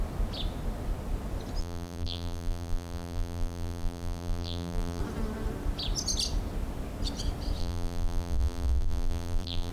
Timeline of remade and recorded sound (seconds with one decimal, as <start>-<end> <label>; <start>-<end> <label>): 0.0-1.6 recorded; 1.6-5.0 remade; 5.0-7.6 recorded; 7.6-9.7 remade